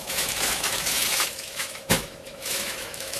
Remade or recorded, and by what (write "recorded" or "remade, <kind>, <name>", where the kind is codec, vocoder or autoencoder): remade, autoencoder, DAC-VAE